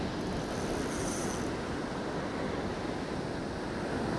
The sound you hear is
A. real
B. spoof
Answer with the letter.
A